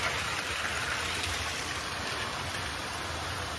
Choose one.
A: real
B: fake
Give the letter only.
A